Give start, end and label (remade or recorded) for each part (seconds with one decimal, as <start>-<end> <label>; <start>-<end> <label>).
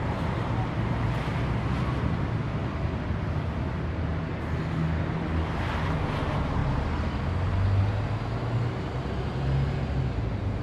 0.0-10.6 recorded